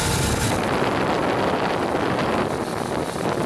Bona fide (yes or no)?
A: yes